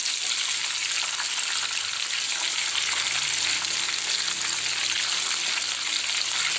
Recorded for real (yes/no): yes